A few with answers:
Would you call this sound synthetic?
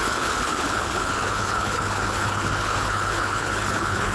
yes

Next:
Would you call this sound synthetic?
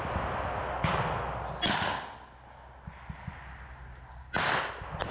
no